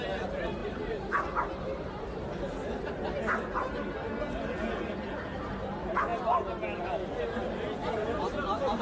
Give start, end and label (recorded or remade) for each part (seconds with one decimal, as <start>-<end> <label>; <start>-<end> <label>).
0.0-0.6 recorded; 0.6-2.4 remade; 2.4-7.8 recorded; 7.8-8.8 remade